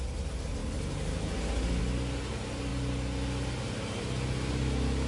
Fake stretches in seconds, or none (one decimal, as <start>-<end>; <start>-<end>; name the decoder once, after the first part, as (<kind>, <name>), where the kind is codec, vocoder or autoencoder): none